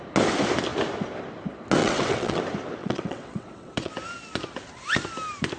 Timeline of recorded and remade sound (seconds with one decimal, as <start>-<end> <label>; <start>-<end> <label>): 0.0-1.8 recorded; 1.8-2.4 remade; 2.4-2.8 recorded; 2.8-3.9 remade; 3.9-5.6 recorded